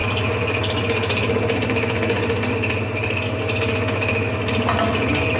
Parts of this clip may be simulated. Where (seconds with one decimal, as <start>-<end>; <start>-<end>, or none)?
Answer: none